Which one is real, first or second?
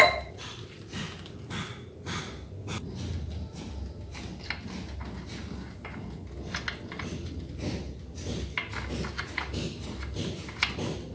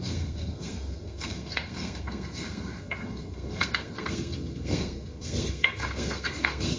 first